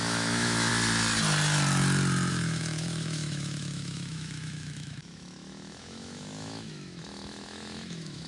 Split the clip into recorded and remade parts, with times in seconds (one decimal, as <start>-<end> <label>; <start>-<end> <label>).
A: 0.0-0.7 remade; 0.7-2.3 recorded; 2.3-8.3 remade